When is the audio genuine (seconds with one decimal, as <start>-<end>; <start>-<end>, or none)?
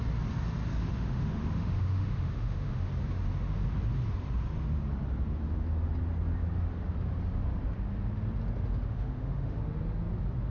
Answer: 0.0-0.9; 2.9-8.9; 9.6-10.5